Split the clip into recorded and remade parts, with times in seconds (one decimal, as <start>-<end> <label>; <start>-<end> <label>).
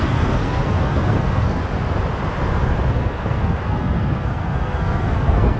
0.0-1.6 remade; 1.6-2.9 recorded; 2.9-5.6 remade